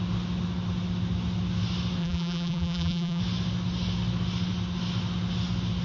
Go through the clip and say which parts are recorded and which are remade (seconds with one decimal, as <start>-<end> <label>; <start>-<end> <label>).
0.0-2.0 recorded; 2.0-3.2 remade; 3.2-5.8 recorded